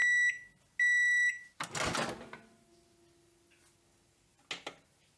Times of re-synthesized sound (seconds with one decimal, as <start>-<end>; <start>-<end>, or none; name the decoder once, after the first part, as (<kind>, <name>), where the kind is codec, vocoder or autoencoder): none